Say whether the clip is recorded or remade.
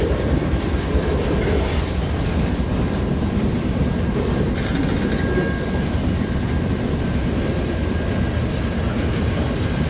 recorded